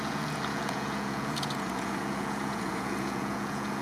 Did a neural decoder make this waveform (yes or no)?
yes